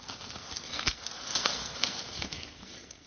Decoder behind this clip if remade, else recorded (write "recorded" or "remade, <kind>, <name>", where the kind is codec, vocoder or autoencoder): remade, codec, SNAC